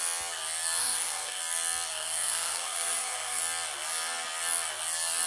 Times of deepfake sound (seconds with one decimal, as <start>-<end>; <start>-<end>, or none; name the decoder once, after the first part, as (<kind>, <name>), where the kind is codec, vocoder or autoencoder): 0.8-1.4 (codec, SNAC); 1.9-3.4